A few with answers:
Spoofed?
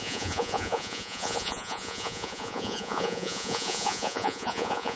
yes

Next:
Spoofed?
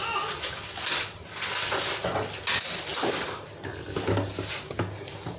no